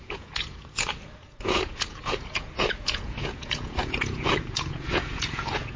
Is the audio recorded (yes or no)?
no